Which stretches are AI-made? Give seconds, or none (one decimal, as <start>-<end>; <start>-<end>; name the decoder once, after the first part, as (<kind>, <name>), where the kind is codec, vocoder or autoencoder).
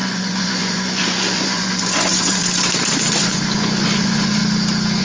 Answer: 0.0-2.4 (vocoder, Vocos); 3.2-4.4